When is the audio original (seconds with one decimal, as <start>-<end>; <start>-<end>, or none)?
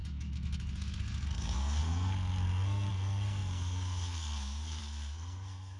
none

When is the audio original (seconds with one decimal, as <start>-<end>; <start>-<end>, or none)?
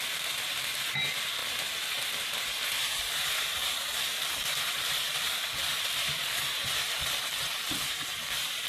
none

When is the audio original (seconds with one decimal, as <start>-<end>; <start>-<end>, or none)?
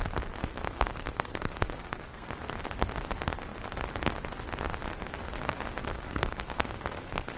0.0-0.4; 2.3-5.8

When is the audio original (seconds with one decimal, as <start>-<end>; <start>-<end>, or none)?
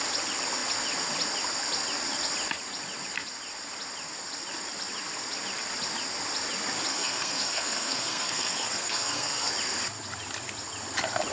0.0-6.9; 9.5-11.3